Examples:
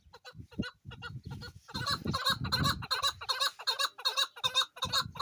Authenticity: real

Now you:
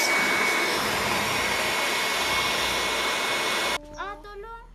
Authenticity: real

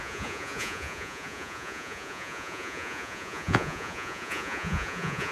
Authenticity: fake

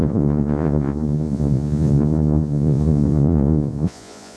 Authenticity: fake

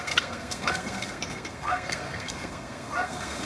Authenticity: fake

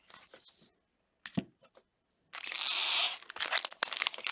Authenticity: real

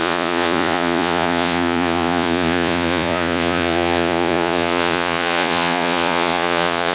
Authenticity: fake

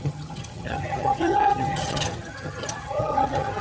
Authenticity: fake